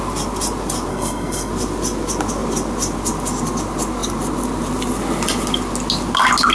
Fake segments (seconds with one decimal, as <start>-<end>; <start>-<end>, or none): 0.9-1.5